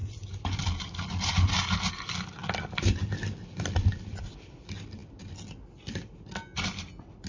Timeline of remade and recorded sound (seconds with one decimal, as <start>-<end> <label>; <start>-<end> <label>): 0.0-7.3 recorded